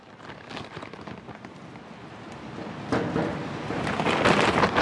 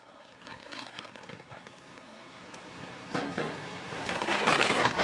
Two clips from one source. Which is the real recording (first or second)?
first